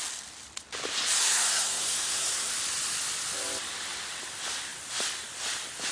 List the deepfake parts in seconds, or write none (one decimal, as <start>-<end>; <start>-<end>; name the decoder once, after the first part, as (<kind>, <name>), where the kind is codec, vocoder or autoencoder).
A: 1.2-2.5 (codec, SNAC)